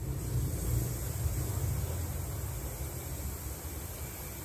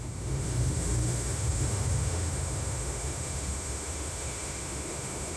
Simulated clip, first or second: second